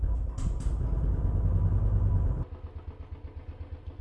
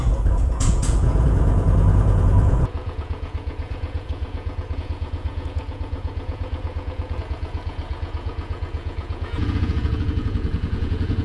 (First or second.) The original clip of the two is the first